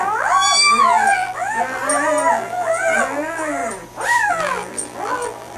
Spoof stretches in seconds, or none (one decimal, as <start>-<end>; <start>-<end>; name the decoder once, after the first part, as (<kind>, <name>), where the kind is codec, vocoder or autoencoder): 0.0-1.8 (vocoder, BigVGAN v2); 2.3-3.6; 4.3-5.6